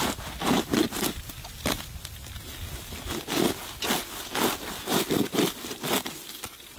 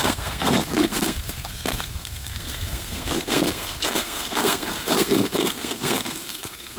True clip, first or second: first